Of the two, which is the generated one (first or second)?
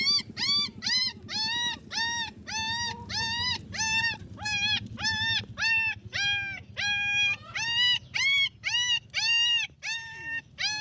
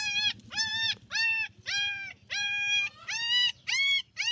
second